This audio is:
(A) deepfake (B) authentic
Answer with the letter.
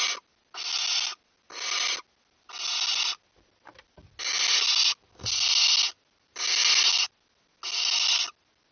B